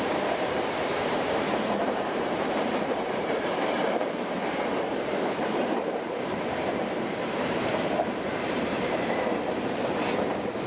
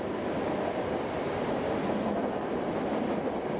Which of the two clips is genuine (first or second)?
second